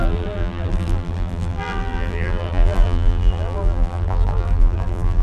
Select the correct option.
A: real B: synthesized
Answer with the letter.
B